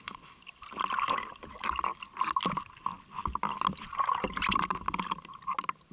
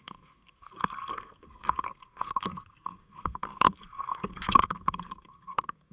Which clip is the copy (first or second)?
second